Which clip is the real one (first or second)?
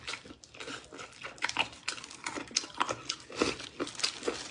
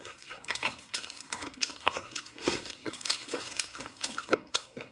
first